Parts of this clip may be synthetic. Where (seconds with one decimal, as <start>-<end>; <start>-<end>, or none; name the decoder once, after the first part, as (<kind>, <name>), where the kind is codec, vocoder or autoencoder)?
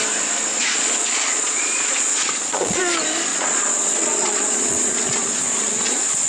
0.5-2.8 (vocoder, Vocos); 3.3-6.3